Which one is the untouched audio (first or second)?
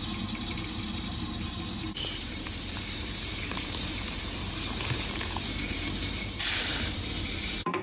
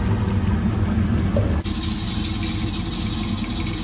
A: second